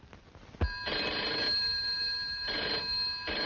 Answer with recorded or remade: recorded